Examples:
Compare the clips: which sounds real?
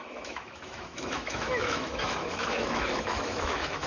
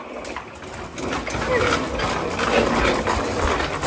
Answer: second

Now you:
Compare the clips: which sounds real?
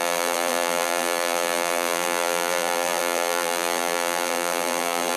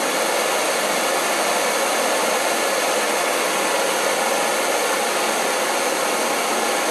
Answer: second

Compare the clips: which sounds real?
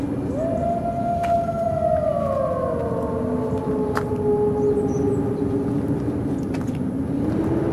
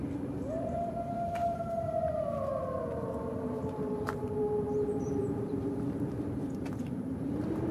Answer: first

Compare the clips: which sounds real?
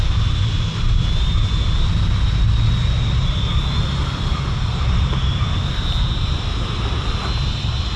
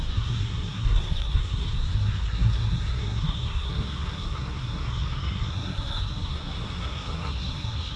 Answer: first